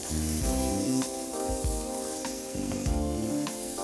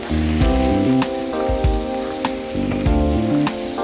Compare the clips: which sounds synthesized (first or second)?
first